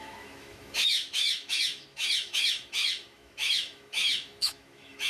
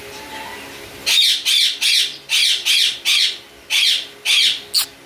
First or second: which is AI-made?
first